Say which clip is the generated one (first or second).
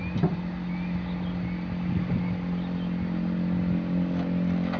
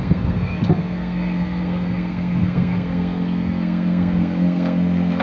second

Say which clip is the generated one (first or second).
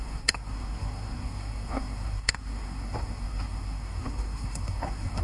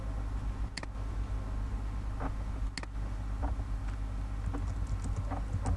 first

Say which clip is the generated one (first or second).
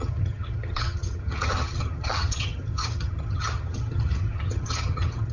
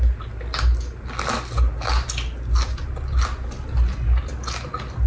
first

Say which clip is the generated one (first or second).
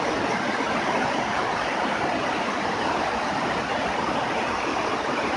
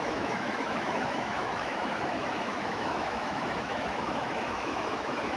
second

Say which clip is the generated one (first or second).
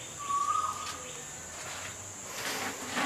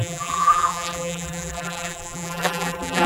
second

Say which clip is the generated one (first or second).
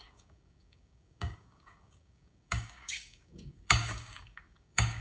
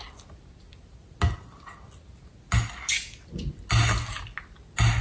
first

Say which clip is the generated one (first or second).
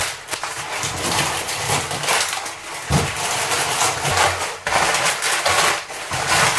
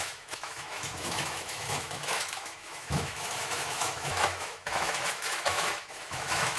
second